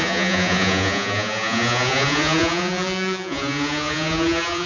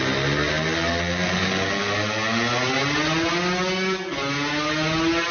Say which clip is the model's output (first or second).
first